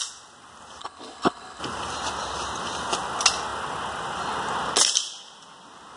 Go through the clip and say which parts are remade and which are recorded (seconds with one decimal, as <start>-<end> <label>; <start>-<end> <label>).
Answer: 0.0-0.8 recorded; 0.8-1.6 remade; 1.6-6.0 recorded